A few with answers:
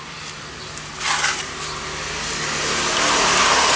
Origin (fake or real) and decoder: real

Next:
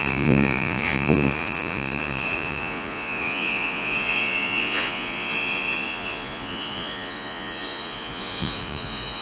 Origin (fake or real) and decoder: fake, vocoder, Vocos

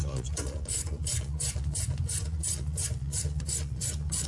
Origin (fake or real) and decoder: fake, vocoder, Vocos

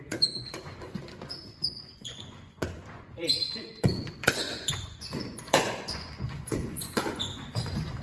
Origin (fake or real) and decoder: fake, vocoder, Vocos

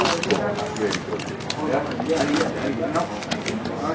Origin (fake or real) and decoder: real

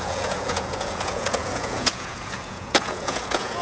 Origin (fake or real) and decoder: fake, vocoder, Vocos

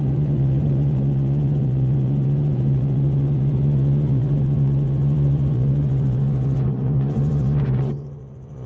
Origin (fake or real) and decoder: fake, vocoder, Vocos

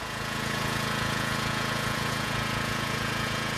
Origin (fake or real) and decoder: fake, vocoder, Vocos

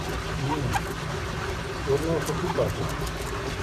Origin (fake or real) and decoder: real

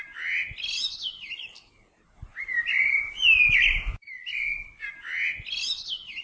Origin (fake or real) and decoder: real